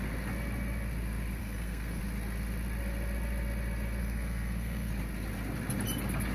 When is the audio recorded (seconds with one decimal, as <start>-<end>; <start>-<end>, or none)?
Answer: 0.0-1.4; 2.0-4.0; 4.9-6.3